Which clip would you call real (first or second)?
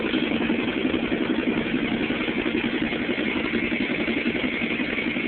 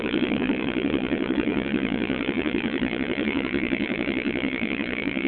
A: first